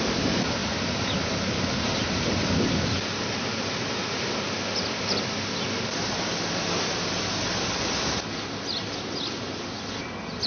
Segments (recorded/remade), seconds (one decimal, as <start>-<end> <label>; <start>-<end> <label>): 0.0-10.5 recorded